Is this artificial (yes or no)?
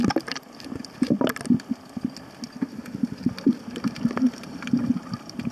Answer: no